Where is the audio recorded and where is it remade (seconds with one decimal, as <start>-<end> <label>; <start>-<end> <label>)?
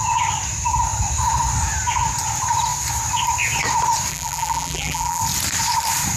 0.0-4.1 recorded; 4.1-5.2 remade; 5.2-6.2 recorded